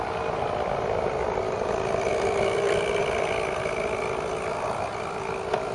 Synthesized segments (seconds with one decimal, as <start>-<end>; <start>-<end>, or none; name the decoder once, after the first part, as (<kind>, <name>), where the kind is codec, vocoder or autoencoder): 2.1-3.0 (vocoder, BigVGAN v2)